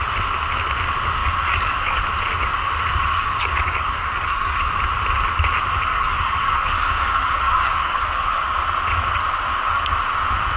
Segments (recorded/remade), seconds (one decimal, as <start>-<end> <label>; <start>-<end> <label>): 0.0-1.2 recorded; 1.2-2.0 remade; 2.0-3.1 recorded; 3.1-4.7 remade; 4.7-5.9 recorded; 5.9-8.4 remade; 8.4-10.6 recorded